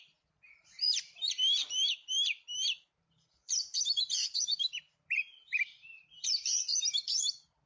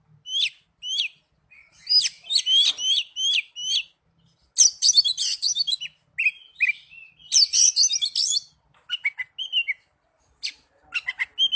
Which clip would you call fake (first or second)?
first